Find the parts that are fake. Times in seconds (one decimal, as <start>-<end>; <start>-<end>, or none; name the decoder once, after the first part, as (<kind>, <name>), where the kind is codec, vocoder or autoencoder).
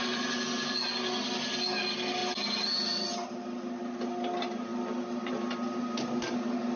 none